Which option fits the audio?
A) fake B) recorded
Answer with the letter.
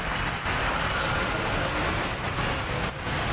B